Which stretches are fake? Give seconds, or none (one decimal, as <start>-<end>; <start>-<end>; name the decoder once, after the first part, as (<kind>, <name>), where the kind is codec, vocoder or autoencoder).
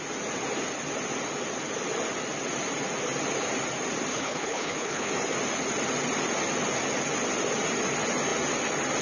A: 4.1-5.1 (codec, HILCodec)